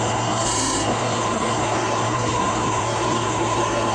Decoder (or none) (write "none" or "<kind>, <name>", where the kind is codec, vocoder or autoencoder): codec, SNAC